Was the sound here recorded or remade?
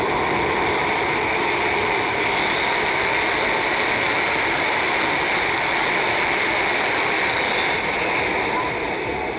recorded